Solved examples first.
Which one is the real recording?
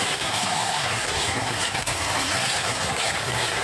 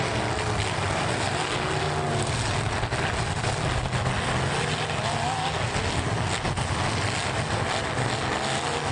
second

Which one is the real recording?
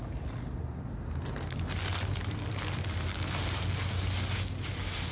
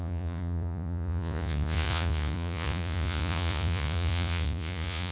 first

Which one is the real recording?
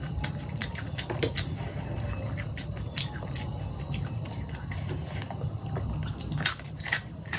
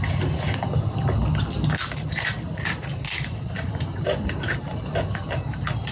second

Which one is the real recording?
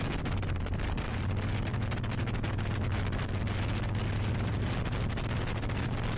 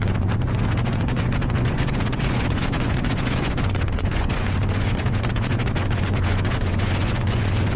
first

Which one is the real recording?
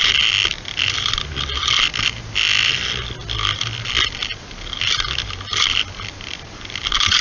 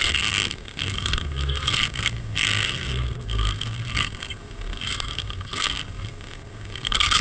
first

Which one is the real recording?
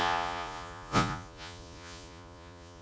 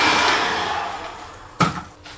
second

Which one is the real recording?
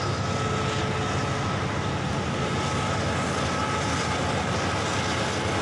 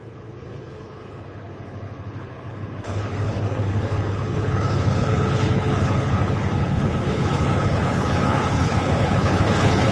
first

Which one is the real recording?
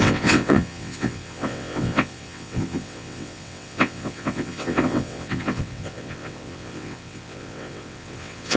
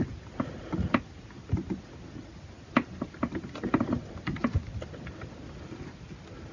second